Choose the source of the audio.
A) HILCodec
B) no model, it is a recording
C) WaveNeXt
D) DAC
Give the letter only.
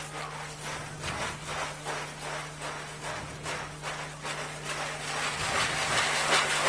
B